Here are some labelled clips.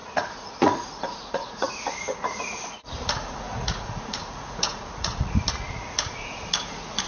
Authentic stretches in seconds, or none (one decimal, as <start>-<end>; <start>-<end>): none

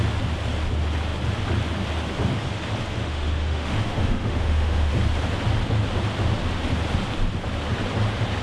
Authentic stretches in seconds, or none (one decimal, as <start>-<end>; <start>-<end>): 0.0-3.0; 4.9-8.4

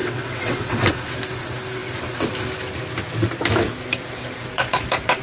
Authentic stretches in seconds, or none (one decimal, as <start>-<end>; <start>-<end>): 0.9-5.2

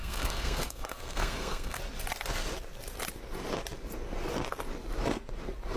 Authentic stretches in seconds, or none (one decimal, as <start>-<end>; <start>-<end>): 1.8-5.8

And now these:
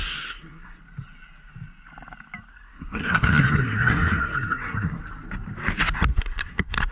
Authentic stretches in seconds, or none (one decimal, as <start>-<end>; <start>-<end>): 0.8-2.5; 5.0-6.1

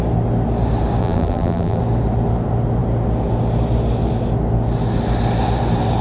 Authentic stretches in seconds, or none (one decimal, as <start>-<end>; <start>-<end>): 0.0-1.0; 1.8-6.0